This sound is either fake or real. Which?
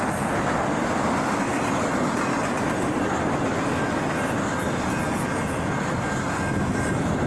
real